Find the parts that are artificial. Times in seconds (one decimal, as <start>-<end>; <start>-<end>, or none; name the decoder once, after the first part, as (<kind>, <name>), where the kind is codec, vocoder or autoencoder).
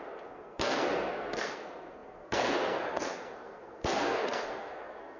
0.0-5.2 (codec, SNAC)